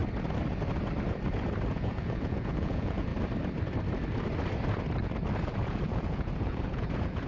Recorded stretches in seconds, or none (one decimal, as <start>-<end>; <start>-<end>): 0.0-1.7; 3.1-5.4